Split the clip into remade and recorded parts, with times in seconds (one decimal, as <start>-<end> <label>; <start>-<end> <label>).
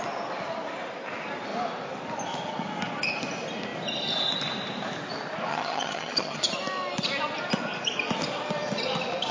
0.0-5.5 recorded; 5.5-6.4 remade; 6.4-9.3 recorded